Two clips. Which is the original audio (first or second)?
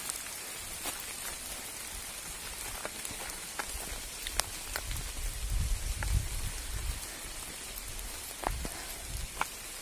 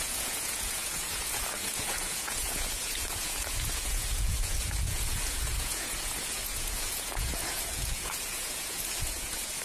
first